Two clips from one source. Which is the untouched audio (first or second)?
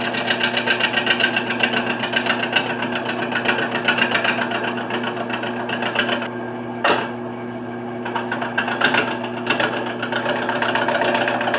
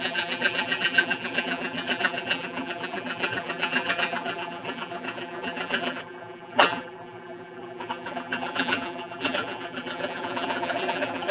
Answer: first